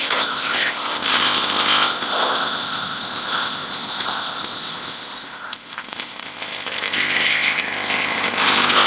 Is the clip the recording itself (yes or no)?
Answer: no